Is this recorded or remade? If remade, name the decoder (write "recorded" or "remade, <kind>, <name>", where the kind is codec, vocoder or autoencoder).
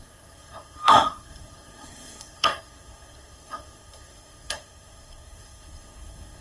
remade, codec, SNAC